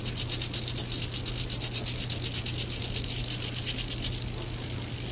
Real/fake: real